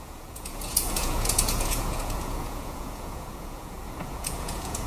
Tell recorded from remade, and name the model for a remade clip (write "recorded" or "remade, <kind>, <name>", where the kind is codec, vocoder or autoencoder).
remade, vocoder, Vocos